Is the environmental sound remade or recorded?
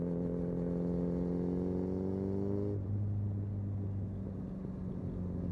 recorded